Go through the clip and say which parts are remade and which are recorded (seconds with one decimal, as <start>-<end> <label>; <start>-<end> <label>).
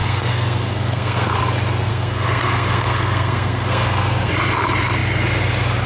0.0-1.4 remade; 1.4-1.9 recorded; 1.9-4.3 remade; 4.3-5.9 recorded